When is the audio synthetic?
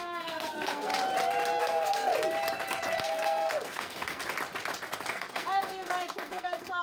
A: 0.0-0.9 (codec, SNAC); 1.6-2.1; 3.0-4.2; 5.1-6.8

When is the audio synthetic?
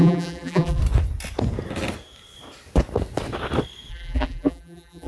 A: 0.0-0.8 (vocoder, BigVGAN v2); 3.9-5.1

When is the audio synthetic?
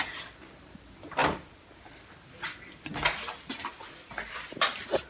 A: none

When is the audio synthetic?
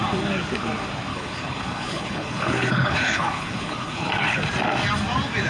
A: 1.1-4.4 (codec, HILCodec)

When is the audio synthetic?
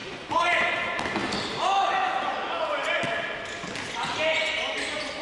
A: 0.0-0.7 (vocoder, BigVGAN v2)